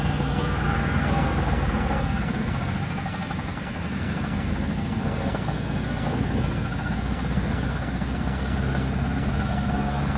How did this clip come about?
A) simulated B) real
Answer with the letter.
A